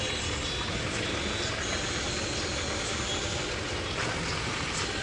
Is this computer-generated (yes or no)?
no